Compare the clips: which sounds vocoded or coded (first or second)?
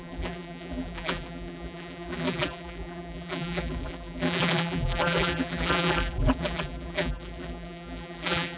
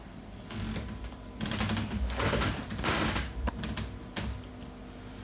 first